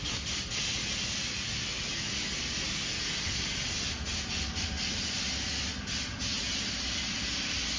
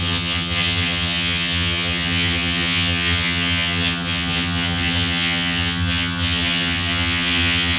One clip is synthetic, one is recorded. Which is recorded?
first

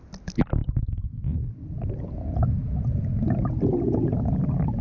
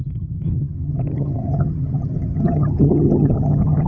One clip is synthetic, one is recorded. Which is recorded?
first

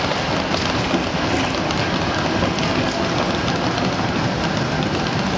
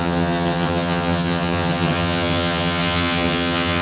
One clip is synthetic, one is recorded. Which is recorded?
first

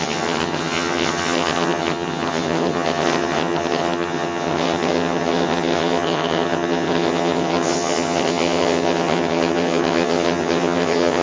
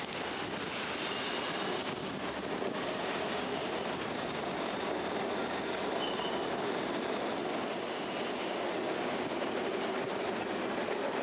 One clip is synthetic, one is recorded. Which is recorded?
second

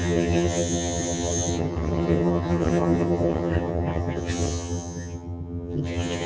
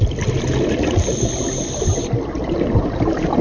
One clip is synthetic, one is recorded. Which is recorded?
second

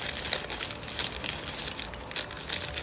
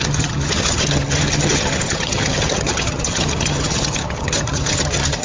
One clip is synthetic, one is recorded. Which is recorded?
first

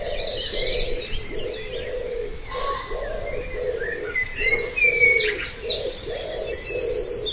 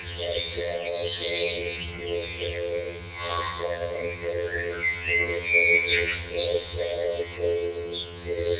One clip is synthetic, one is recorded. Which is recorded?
first